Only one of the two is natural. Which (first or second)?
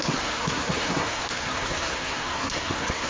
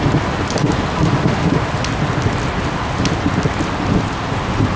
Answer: second